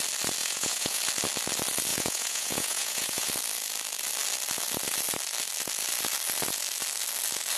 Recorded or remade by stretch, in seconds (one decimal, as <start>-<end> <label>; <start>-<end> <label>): 0.0-0.4 recorded; 0.4-1.0 remade; 1.0-1.9 recorded; 1.9-3.3 remade; 3.3-7.6 recorded